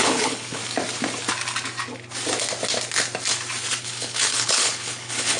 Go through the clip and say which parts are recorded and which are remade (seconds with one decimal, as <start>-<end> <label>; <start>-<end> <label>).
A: 0.0-0.6 remade; 0.6-3.8 recorded; 3.8-5.4 remade